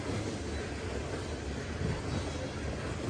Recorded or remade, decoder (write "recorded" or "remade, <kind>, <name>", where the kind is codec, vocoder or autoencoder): recorded